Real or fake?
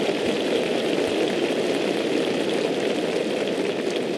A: real